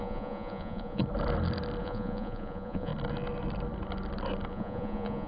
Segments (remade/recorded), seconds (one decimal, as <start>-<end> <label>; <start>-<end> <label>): 0.0-1.0 remade; 1.0-1.8 recorded; 1.8-2.9 remade; 2.9-4.5 recorded; 4.5-5.3 remade